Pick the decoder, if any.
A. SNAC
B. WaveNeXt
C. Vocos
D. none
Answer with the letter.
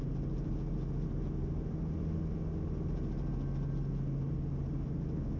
D